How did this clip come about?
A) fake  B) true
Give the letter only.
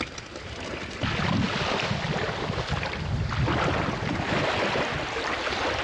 B